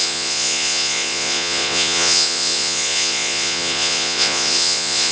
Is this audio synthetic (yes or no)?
yes